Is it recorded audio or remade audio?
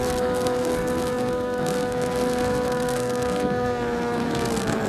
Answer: remade